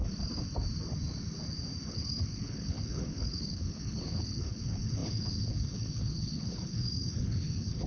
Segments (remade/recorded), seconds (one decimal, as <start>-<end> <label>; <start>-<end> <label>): 0.0-1.9 recorded; 1.9-7.9 remade